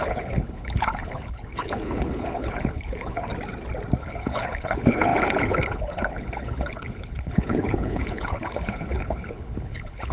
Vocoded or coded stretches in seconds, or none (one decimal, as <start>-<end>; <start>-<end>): 0.0-3.3; 4.0-10.1